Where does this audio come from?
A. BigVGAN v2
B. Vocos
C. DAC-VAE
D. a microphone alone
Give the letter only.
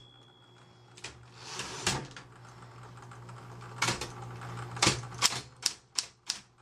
D